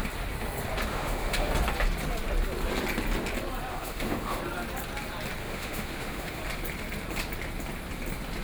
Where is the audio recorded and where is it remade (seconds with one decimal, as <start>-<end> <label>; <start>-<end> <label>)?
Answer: 0.0-0.9 recorded; 0.9-1.5 remade; 1.5-3.7 recorded; 3.7-4.4 remade; 4.4-5.4 recorded; 5.4-6.4 remade; 6.4-8.4 recorded